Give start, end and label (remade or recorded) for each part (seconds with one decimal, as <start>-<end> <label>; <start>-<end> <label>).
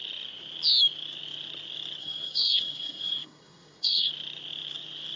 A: 0.0-2.0 recorded; 2.0-4.1 remade; 4.1-5.2 recorded